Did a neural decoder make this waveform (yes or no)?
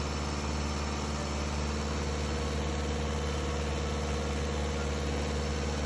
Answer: no